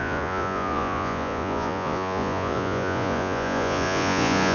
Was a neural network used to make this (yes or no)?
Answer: yes